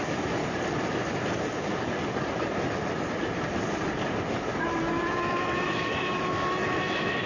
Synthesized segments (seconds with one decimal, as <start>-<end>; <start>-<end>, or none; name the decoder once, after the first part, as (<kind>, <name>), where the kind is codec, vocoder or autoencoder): 0.0-0.4 (autoencoder, DAC-VAE); 4.8-7.3